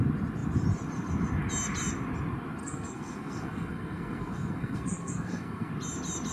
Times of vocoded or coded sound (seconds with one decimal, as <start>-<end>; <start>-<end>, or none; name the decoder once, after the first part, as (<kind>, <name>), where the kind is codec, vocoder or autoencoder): 2.6-5.7 (codec, SNAC)